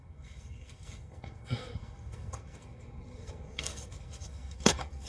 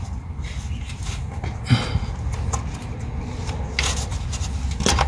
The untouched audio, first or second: second